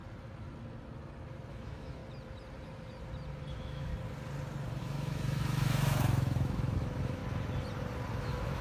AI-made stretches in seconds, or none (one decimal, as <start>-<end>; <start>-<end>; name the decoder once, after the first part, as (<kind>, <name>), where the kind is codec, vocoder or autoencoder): 1.5-2.0 (autoencoder, DAC-VAE); 3.5-3.9; 4.8-7.2; 8.2-8.6